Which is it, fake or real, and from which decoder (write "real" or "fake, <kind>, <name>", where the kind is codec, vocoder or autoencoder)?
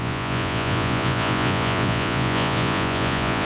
fake, vocoder, Vocos